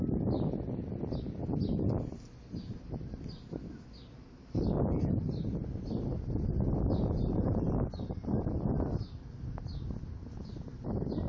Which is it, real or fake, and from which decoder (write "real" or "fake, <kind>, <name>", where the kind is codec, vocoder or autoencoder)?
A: real